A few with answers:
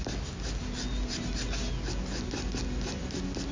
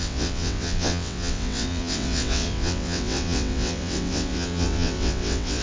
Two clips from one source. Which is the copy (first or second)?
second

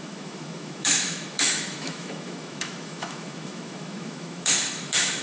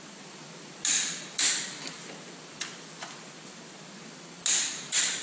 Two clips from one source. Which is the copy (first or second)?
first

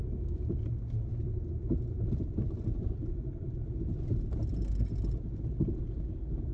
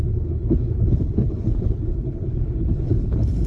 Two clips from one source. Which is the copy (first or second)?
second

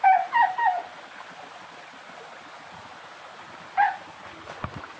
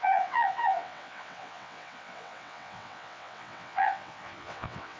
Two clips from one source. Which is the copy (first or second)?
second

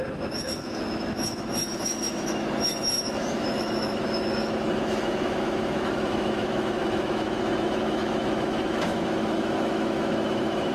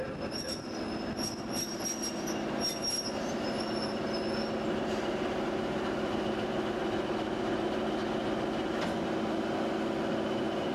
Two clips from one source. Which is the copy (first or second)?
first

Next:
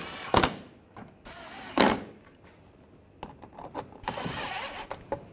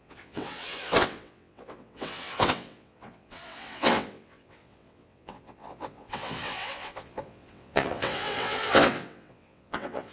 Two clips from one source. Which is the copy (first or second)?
second